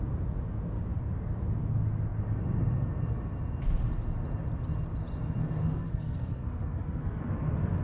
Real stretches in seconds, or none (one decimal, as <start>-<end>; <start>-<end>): 0.0-5.6; 7.2-7.8